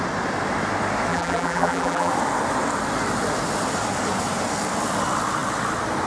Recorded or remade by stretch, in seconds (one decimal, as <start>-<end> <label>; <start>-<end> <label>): 0.0-1.1 recorded; 1.1-2.1 remade; 2.1-6.1 recorded